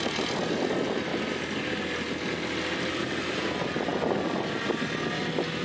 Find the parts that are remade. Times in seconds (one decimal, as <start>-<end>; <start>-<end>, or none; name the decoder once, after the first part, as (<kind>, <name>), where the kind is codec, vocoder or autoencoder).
none